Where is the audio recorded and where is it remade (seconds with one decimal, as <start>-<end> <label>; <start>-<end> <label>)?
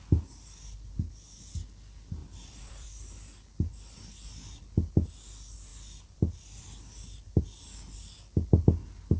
0.0-2.2 recorded; 2.2-4.6 remade; 4.6-5.7 recorded; 5.7-7.4 remade; 7.4-9.2 recorded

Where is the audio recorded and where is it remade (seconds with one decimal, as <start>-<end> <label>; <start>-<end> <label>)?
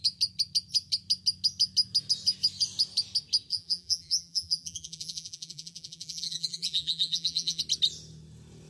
0.0-3.5 recorded; 3.5-7.6 remade; 7.6-8.7 recorded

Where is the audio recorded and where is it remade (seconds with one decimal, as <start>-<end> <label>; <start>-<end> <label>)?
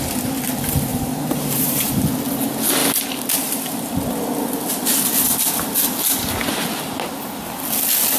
0.0-0.9 recorded; 0.9-1.9 remade; 1.9-8.2 recorded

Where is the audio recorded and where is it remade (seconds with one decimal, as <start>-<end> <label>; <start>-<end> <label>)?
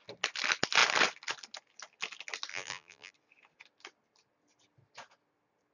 0.0-2.5 recorded; 2.5-3.1 remade; 3.1-5.7 recorded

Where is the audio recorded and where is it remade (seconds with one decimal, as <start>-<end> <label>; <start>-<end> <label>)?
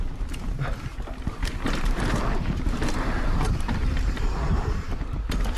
0.0-1.4 recorded; 1.4-4.8 remade; 4.8-5.6 recorded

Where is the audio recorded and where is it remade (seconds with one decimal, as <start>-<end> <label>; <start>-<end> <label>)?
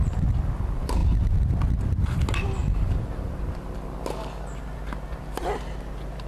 0.0-2.6 recorded; 2.6-3.4 remade; 3.4-6.3 recorded